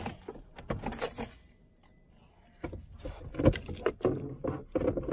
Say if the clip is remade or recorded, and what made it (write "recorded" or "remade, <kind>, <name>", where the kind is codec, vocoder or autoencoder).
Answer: recorded